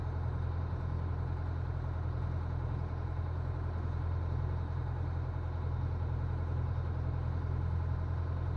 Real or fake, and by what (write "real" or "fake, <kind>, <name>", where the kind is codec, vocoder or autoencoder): real